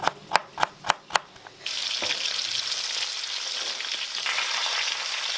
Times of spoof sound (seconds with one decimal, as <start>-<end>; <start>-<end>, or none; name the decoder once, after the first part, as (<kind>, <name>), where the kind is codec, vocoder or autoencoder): none